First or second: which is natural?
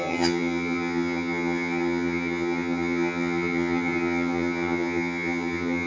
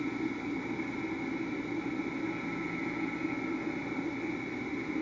second